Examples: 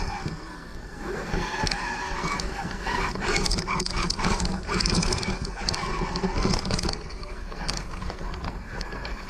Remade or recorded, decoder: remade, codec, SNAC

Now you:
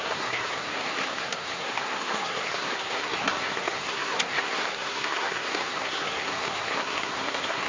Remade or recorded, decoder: remade, codec, SNAC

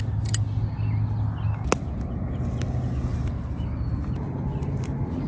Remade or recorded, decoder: recorded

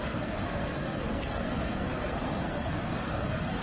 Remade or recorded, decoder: remade, codec, SNAC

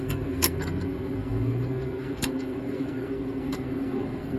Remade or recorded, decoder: remade, codec, SNAC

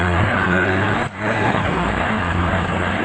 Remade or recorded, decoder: remade, codec, SNAC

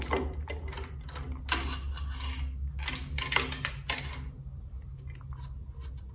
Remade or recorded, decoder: recorded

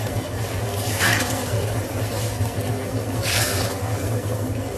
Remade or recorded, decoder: remade, codec, SNAC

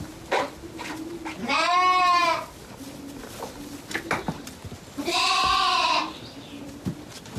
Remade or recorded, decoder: recorded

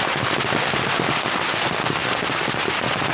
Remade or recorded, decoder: recorded